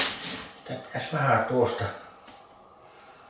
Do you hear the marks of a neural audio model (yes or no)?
no